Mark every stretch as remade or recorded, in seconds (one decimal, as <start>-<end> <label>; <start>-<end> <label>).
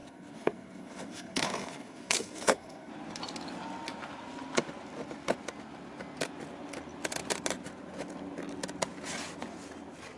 0.0-2.9 remade; 2.9-10.2 recorded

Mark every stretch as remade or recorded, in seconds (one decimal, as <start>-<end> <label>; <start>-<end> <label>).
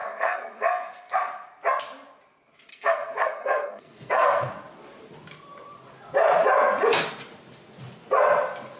0.0-1.2 remade; 1.2-2.7 recorded; 2.7-4.5 remade; 4.5-8.8 recorded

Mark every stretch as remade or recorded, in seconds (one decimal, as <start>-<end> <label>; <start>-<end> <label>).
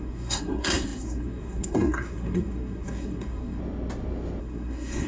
0.0-3.6 remade; 3.6-4.4 recorded; 4.4-5.1 remade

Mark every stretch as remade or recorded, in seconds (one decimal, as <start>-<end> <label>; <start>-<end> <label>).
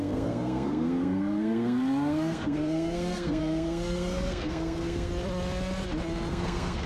0.0-5.1 remade; 5.1-6.3 recorded; 6.3-6.9 remade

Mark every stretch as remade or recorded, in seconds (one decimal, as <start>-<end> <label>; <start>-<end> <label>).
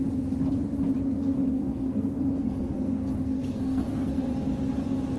0.0-1.2 recorded; 1.2-4.3 remade; 4.3-5.2 recorded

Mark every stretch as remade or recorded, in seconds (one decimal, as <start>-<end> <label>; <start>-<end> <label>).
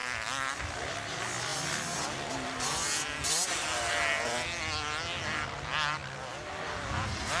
0.0-7.4 recorded